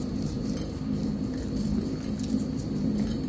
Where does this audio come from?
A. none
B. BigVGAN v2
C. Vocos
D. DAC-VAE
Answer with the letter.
B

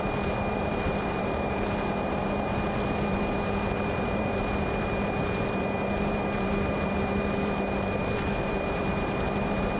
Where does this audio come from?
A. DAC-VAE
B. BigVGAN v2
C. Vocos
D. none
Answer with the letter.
B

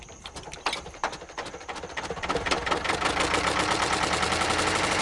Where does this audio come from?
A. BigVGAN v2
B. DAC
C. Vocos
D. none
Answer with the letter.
A